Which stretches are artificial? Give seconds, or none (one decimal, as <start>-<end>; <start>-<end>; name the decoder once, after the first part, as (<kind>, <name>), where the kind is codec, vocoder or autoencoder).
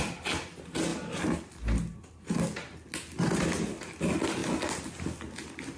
none